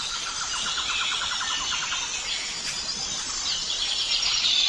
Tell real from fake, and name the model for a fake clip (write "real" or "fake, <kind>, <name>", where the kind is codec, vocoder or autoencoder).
fake, vocoder, BigVGAN v2